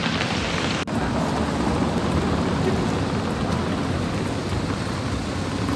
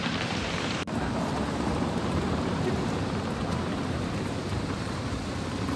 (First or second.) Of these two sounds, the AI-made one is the second